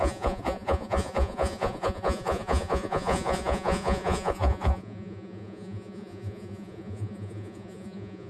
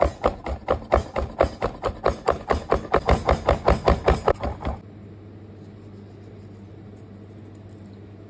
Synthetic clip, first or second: first